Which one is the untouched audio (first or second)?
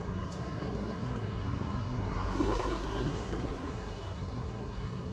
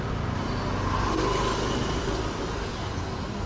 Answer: second